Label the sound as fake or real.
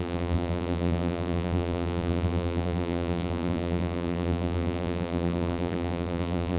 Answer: fake